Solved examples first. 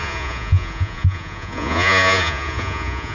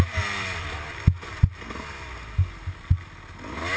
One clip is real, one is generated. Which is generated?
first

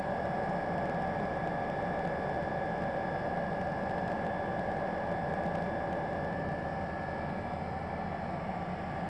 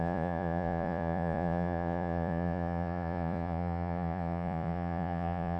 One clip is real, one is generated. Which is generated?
second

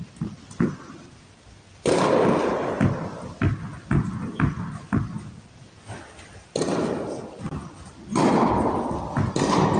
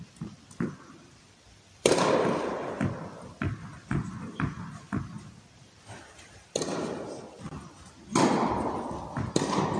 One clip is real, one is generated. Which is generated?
second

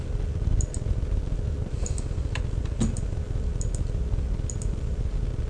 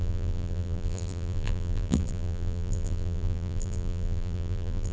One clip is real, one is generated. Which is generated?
second